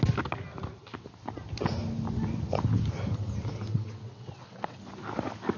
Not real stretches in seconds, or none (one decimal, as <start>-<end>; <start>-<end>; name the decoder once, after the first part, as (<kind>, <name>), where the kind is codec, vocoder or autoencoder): 3.7-4.8 (vocoder, WaveNeXt)